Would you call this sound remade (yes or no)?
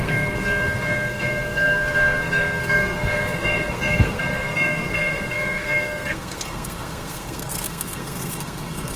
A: yes